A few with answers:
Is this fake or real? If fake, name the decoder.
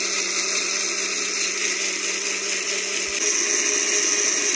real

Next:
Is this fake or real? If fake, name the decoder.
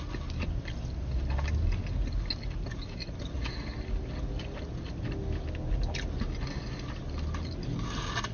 real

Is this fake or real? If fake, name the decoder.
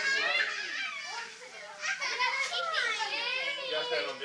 real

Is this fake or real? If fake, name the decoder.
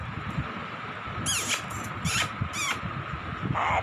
real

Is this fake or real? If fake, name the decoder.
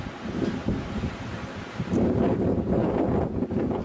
fake, vocoder, BigVGAN v2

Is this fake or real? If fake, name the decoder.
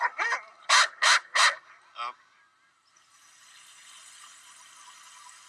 real